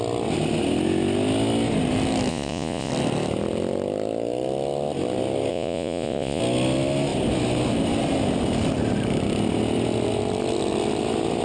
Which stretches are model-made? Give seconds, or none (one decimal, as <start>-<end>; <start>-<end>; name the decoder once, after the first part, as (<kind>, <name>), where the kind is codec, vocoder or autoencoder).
2.3-2.9 (vocoder, Vocos); 5.5-6.4